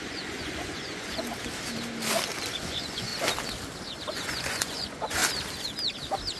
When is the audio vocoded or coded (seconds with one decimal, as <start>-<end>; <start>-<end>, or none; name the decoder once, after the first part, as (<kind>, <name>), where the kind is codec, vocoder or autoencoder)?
0.0-1.3 (vocoder, Vocos); 2.6-3.1; 4.1-5.2

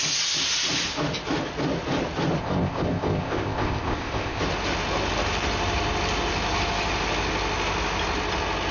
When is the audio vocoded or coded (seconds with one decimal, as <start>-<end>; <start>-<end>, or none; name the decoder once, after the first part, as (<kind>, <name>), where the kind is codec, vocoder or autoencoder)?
2.4-4.4 (codec, ZipCodec)

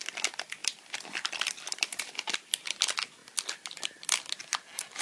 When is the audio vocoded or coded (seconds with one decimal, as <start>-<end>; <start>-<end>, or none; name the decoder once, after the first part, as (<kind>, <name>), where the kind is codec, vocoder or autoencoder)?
0.6-2.0 (vocoder, BigVGAN v2)

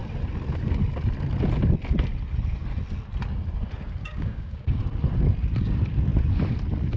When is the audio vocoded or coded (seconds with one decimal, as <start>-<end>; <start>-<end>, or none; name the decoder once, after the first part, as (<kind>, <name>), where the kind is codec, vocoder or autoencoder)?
4.0-4.8 (codec, DAC)

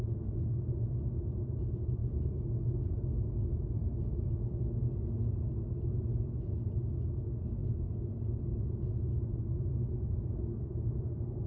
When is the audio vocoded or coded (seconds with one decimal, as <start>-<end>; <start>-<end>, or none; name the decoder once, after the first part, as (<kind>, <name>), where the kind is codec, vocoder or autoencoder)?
none